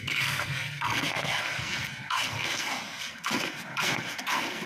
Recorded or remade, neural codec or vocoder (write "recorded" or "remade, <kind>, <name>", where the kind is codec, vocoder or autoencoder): remade, codec, SNAC